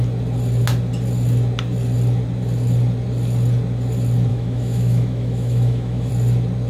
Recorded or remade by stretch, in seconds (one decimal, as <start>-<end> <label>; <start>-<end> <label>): 0.0-4.3 recorded; 4.3-6.1 remade; 6.1-6.7 recorded